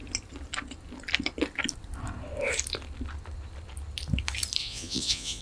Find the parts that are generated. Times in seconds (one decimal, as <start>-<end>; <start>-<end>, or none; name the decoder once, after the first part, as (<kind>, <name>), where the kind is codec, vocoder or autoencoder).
4.6-5.4 (vocoder, Vocos)